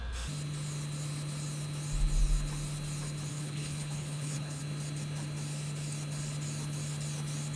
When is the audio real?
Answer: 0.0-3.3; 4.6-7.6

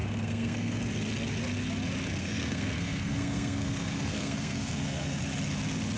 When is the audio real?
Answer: 0.8-2.2; 5.2-6.0